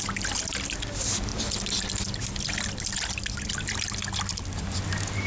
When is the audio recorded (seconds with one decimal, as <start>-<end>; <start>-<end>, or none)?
0.0-5.3